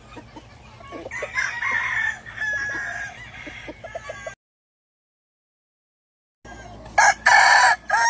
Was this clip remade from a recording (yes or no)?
no